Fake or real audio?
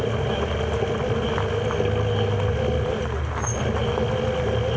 real